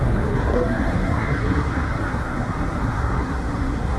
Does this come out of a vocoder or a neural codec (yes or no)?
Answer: yes